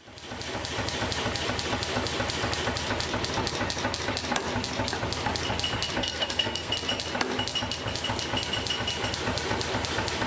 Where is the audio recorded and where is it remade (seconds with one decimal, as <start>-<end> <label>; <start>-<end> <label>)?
0.0-6.0 recorded; 6.0-6.7 remade; 6.7-10.3 recorded